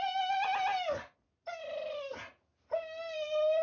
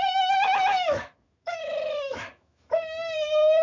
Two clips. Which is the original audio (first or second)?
first